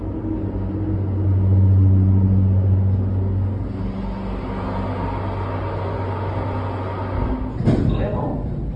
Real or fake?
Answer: real